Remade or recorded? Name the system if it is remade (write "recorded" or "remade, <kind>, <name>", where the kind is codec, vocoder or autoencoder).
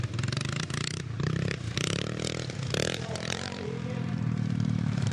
remade, vocoder, BigVGAN v2